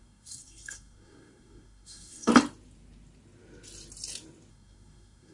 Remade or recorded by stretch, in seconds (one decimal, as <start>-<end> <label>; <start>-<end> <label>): 0.0-2.3 remade; 2.3-4.5 recorded; 4.5-5.3 remade